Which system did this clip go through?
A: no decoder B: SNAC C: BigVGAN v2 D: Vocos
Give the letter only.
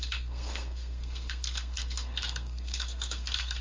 B